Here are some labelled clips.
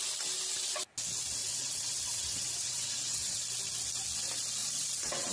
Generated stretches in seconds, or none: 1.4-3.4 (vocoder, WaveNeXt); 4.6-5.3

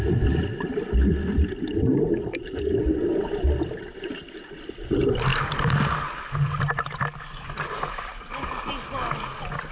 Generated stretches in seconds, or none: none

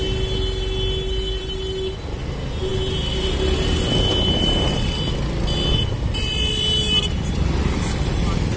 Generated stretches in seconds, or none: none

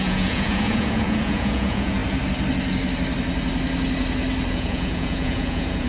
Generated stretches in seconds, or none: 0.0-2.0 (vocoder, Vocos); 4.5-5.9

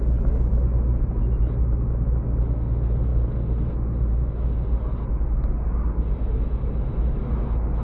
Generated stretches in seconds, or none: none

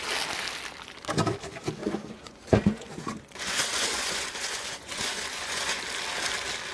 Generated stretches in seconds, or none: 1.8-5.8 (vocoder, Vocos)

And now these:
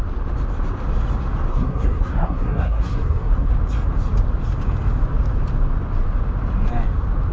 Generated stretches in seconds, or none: 1.5-3.5 (codec, SNAC)